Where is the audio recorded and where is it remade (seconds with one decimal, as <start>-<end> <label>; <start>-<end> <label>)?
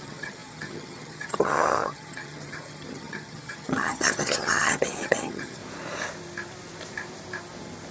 0.0-5.6 remade; 5.6-7.9 recorded